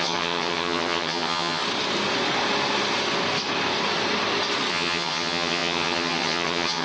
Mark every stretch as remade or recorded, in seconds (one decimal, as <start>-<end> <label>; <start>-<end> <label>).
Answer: 0.0-1.6 remade; 1.6-4.7 recorded; 4.7-6.8 remade